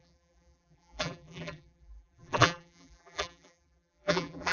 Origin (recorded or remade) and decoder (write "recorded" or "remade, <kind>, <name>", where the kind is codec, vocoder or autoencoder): remade, vocoder, BigVGAN v2